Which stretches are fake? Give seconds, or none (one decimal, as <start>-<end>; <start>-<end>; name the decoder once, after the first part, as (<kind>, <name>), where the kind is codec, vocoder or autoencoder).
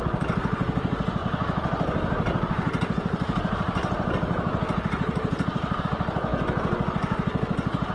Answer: 1.2-5.8 (vocoder, BigVGAN v2)